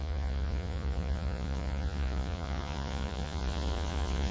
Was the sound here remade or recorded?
remade